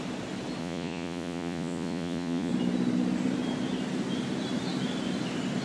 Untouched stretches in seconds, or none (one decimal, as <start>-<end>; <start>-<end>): 0.0-0.6; 2.5-5.6